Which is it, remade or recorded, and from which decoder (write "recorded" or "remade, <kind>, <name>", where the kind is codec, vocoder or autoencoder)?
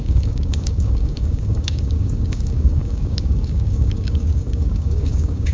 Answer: remade, codec, DAC